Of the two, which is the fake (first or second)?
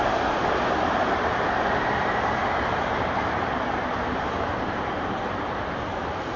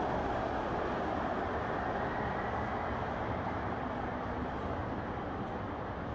first